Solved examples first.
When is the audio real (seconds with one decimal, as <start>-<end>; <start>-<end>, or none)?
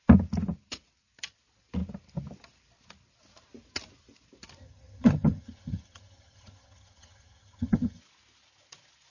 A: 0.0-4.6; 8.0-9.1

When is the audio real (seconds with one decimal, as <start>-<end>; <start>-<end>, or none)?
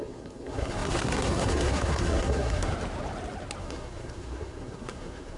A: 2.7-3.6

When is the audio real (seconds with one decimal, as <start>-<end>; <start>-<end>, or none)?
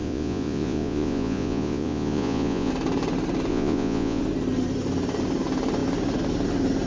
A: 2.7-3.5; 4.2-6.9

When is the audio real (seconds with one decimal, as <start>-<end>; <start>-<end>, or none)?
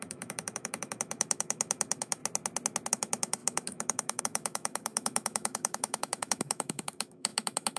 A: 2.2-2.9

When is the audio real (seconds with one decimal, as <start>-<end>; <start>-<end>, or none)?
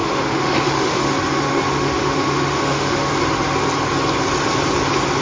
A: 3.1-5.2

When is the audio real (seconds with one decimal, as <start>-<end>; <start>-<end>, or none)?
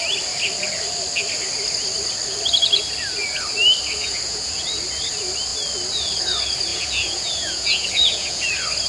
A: 0.0-4.0; 4.6-6.7; 8.5-8.9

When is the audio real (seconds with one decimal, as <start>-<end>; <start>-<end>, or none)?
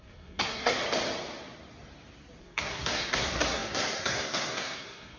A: 0.8-2.4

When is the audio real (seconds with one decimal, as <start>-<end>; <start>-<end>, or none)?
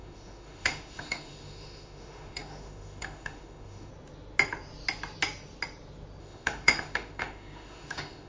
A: 3.9-6.2